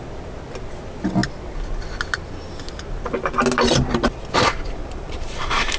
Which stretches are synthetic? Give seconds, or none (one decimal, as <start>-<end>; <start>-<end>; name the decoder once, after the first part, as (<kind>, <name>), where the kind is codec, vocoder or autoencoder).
4.8-5.8 (vocoder, BigVGAN v2)